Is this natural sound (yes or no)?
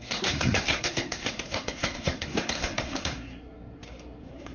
no